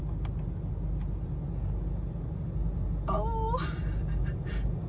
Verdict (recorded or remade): recorded